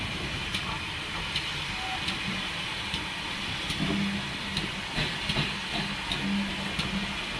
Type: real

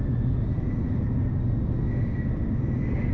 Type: real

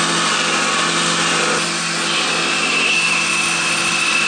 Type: real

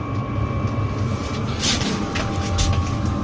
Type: real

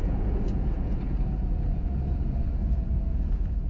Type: fake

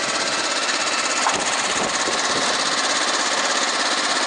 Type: real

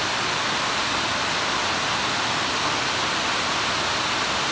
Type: real